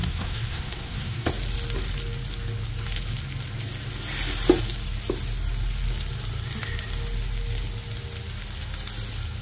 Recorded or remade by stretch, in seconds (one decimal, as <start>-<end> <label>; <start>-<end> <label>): 0.0-1.3 remade; 1.3-9.4 recorded